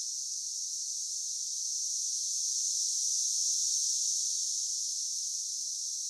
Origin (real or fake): real